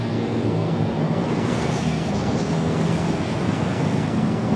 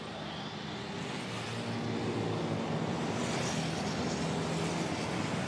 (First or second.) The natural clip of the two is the second